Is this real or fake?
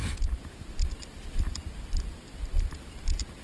real